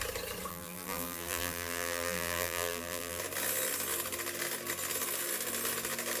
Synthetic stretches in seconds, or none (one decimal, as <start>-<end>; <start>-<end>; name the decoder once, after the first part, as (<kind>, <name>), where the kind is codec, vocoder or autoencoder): 0.5-3.2 (vocoder, BigVGAN v2)